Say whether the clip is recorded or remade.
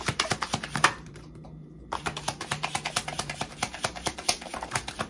remade